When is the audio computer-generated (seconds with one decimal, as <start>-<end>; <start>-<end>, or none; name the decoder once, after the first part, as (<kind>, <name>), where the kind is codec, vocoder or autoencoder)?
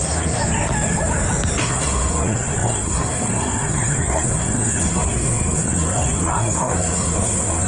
0.0-0.4 (codec, SNAC); 1.6-7.7